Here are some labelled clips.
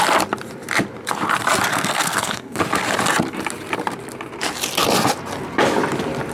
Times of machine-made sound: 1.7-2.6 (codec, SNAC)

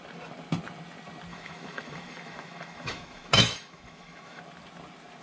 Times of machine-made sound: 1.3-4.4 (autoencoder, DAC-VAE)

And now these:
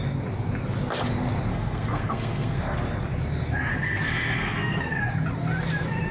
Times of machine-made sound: 1.5-2.6 (codec, SNAC); 3.7-5.0

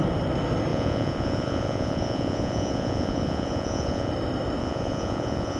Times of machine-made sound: 0.7-4.1 (vocoder, Vocos); 4.6-5.6

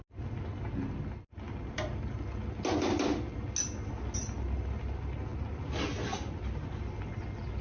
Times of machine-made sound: none

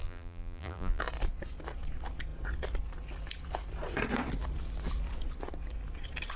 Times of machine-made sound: 0.0-1.0 (vocoder, BigVGAN v2)

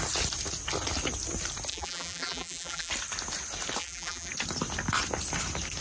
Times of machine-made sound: 1.7-2.9 (vocoder, BigVGAN v2); 3.8-4.3

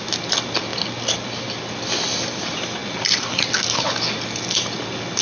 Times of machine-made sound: none